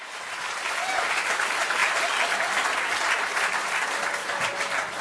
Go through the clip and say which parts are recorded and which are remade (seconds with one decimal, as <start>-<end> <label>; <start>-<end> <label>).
0.0-5.0 recorded